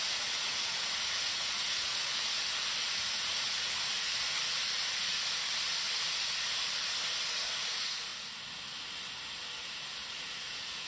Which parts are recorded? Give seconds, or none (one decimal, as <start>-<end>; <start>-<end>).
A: 2.1-2.9; 4.4-7.2; 8.1-10.1